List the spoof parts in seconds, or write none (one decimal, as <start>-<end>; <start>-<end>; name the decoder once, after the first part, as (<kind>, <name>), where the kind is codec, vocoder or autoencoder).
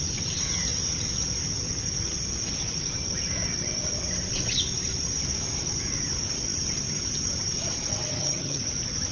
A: 8.0-8.6 (vocoder, HiFi-GAN)